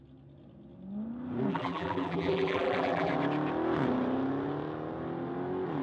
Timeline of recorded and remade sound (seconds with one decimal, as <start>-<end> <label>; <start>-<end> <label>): 0.0-1.5 recorded; 1.5-3.1 remade; 3.1-5.8 recorded